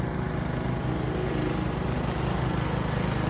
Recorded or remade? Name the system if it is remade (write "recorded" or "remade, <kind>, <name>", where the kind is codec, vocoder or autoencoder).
recorded